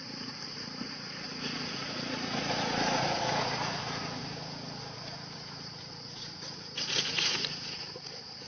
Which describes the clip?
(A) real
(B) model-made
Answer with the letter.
B